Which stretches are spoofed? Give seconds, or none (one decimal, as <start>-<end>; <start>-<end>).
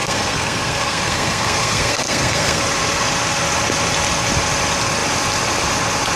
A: 0.0-2.6